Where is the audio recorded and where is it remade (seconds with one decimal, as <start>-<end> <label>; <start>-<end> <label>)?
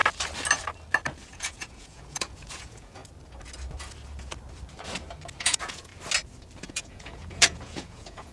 0.0-1.3 recorded; 1.3-3.0 remade; 3.0-5.4 recorded; 5.4-5.9 remade; 5.9-6.6 recorded; 6.6-8.3 remade